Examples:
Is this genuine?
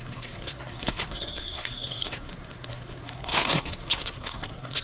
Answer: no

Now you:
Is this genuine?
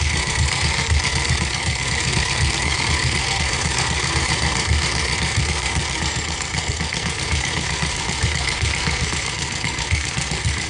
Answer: no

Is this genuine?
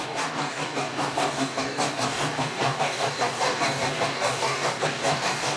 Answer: no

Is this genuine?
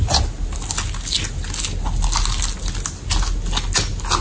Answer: yes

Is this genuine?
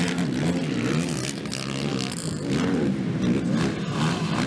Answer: yes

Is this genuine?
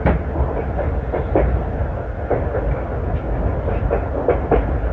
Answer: yes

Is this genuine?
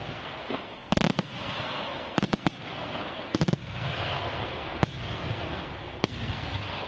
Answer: no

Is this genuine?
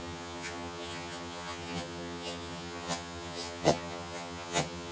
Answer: no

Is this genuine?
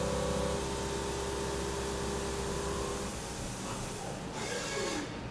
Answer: yes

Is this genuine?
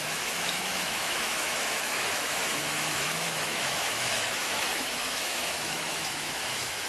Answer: no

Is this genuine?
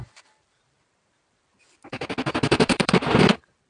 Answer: no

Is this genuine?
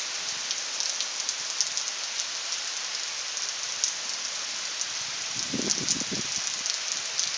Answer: yes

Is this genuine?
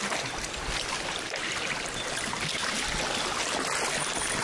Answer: yes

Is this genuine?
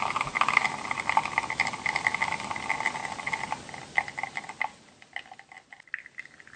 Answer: yes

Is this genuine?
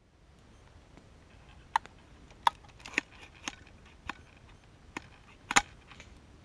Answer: yes